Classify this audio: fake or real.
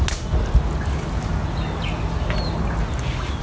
real